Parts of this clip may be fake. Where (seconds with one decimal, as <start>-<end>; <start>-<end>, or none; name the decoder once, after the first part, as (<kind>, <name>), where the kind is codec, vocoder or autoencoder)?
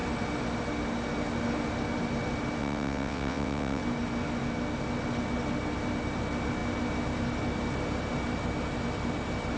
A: 2.6-3.8 (vocoder, WaveNeXt)